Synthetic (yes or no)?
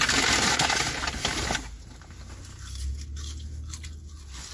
no